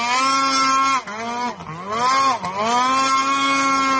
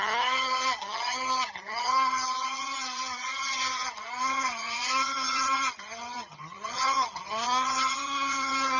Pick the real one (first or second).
first